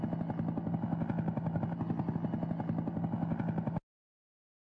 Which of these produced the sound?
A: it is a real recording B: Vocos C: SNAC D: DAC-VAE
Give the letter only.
A